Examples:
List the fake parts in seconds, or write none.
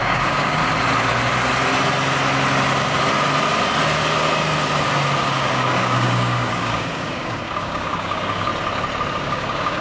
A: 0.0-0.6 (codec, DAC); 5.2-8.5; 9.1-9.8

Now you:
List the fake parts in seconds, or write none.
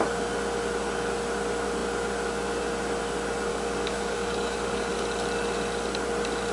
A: 3.5-4.9 (codec, DAC)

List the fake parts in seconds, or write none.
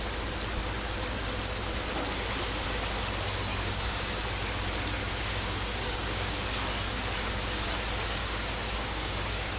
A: 3.5-4.2 (codec, DAC); 5.0-6.4; 8.2-9.6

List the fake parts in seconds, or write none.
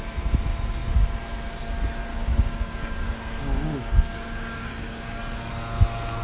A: 2.1-5.2 (codec, DAC)